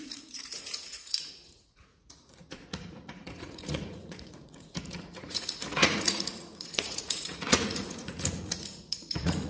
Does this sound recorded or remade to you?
remade